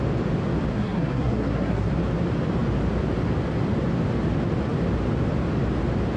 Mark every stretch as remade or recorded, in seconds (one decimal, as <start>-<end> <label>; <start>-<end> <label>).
0.0-0.7 recorded; 0.7-1.9 remade; 1.9-6.2 recorded